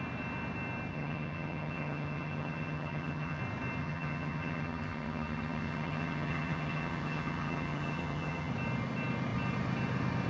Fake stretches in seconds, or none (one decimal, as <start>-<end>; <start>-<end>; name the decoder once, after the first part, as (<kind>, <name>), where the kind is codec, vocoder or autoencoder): 0.9-3.4 (vocoder, HiFi-GAN); 3.8-8.5